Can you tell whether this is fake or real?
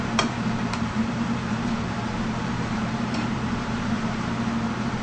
fake